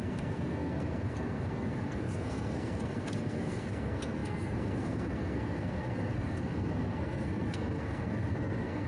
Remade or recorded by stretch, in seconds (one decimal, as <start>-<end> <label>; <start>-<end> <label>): 0.0-8.9 remade